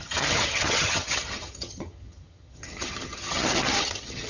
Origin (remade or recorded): remade